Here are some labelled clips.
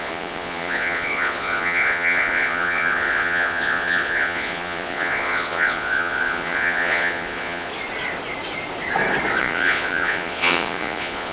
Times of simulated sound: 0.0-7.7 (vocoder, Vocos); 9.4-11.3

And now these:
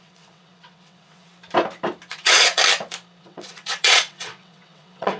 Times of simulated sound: 0.0-1.3 (vocoder, WaveNeXt); 2.1-2.6; 3.2-5.2

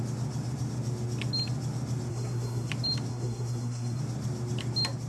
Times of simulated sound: 2.1-2.7 (codec, SNAC); 3.1-4.0

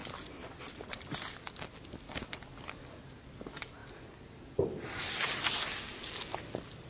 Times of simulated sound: none

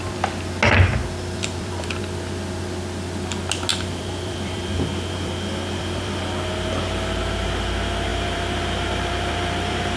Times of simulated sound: 1.0-2.0 (vocoder, BigVGAN v2); 3.7-6.2; 8.1-10.0